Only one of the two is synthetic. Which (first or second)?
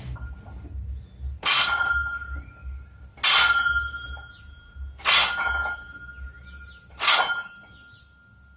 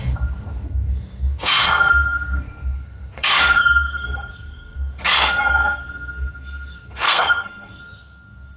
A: second